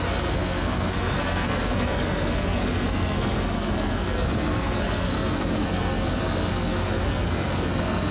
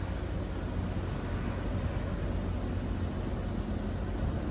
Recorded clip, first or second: second